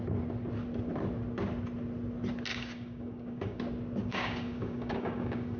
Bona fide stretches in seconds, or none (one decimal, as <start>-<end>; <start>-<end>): 0.0-2.5; 3.6-4.0